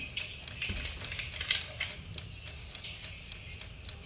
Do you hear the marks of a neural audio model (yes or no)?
no